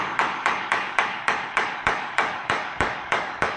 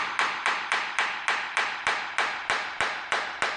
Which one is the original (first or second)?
second